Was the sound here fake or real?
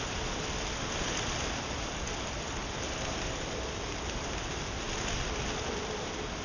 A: real